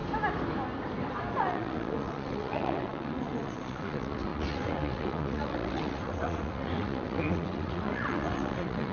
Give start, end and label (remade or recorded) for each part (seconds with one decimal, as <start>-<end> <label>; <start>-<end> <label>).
0.0-1.4 recorded; 1.4-8.9 remade